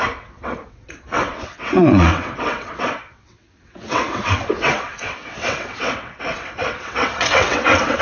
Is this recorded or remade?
remade